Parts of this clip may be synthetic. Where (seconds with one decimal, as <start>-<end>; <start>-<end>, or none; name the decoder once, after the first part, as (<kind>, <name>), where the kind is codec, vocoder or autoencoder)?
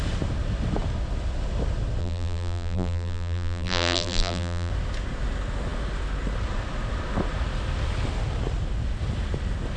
2.0-4.7 (vocoder, BigVGAN v2)